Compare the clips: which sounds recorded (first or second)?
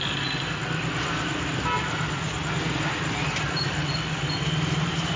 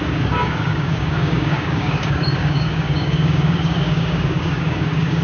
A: first